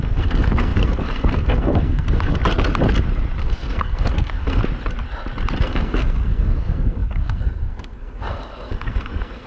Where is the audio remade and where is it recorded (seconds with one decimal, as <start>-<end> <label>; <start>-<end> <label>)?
0.0-2.4 remade; 2.4-3.4 recorded; 3.4-4.6 remade; 4.6-5.6 recorded; 5.6-9.5 remade